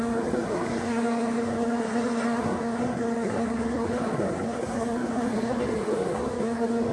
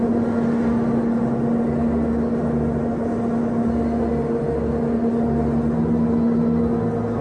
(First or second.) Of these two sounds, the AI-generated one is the first